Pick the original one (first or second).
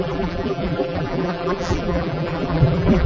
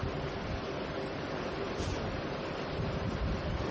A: second